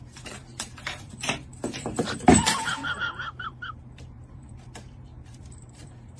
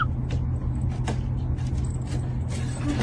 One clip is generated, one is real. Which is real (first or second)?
second